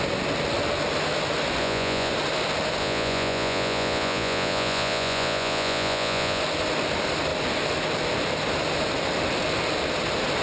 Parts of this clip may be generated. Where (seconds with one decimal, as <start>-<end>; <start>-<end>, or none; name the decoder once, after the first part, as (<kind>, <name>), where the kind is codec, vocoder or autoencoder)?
1.6-2.1 (vocoder, Vocos); 2.8-6.4